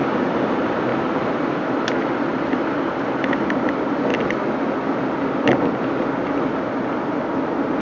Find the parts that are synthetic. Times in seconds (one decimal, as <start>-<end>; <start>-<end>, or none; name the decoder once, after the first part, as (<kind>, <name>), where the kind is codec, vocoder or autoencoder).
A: 0.9-1.6 (vocoder, BigVGAN v2)